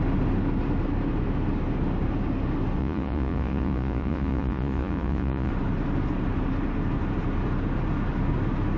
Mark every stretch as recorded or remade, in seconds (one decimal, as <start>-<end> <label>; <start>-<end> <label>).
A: 0.0-2.8 recorded; 2.8-5.5 remade; 5.5-8.8 recorded